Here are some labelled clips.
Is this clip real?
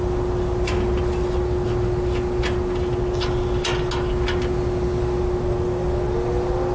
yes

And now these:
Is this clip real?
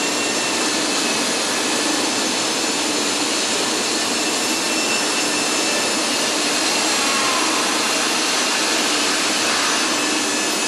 yes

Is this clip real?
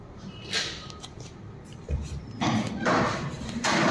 no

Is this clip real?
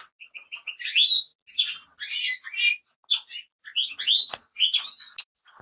yes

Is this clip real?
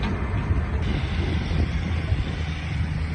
yes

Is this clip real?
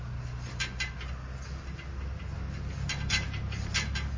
yes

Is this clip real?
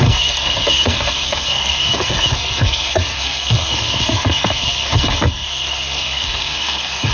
no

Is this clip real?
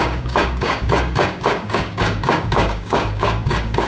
no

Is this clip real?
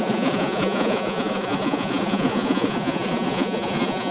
no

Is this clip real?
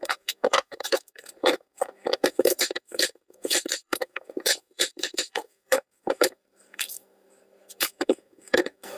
no